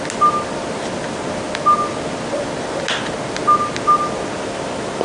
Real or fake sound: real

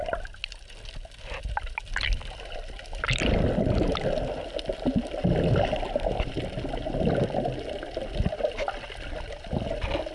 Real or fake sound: real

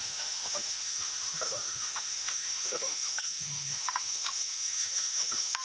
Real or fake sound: fake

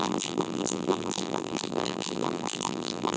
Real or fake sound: fake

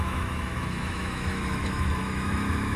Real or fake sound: fake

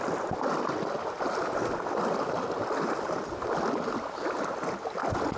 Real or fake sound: real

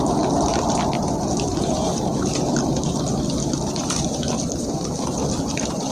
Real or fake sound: real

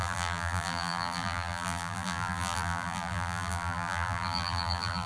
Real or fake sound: fake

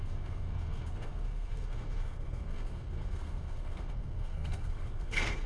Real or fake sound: fake